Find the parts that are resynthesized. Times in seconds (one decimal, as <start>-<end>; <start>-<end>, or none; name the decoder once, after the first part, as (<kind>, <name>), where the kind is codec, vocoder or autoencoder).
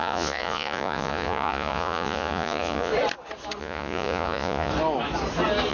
0.0-2.9 (vocoder, Vocos); 3.6-4.7